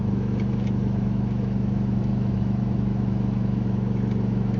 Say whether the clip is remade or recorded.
remade